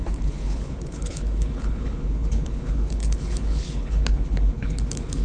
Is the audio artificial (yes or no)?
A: yes